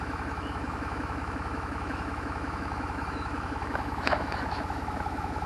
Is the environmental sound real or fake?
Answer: fake